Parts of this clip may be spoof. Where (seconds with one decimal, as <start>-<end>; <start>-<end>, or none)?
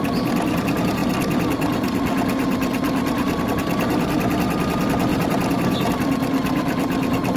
5.1-5.9